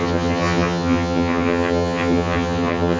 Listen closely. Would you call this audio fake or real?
fake